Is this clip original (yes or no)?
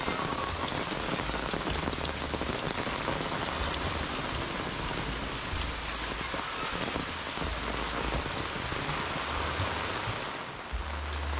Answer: yes